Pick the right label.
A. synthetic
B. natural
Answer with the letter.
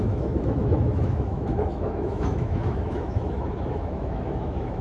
A